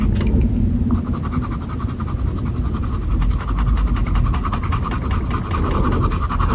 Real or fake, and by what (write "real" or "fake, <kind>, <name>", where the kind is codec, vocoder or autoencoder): real